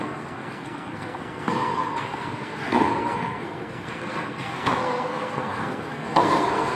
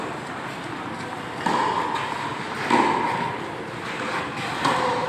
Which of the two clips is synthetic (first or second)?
first